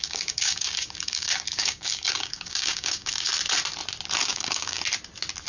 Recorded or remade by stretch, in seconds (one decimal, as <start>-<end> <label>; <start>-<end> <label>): 0.0-3.3 remade; 3.3-4.2 recorded; 4.2-4.8 remade; 4.8-5.5 recorded